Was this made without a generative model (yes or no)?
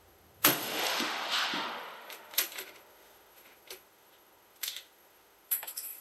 no